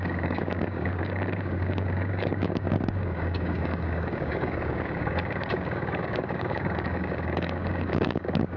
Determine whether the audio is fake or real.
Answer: fake